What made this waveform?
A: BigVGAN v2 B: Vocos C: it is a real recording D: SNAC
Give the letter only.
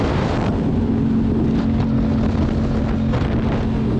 C